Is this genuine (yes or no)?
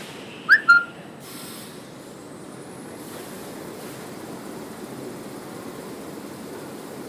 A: yes